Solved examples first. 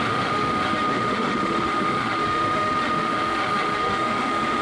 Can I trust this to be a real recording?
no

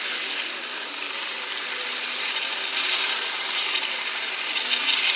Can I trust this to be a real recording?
yes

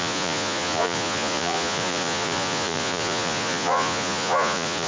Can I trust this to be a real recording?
no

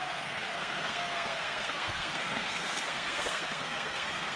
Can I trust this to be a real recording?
no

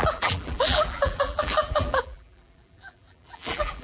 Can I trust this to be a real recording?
no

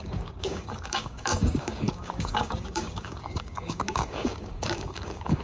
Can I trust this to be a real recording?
no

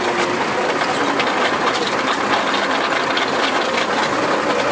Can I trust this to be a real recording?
yes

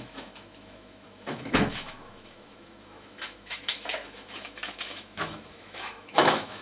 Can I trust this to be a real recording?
no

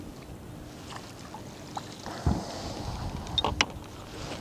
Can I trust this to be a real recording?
yes